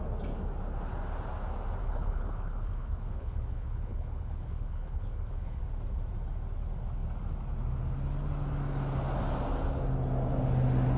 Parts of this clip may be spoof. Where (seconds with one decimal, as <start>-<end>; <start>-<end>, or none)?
1.8-5.6